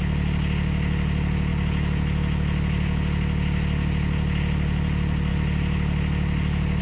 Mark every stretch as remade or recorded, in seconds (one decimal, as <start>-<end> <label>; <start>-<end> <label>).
0.0-6.8 recorded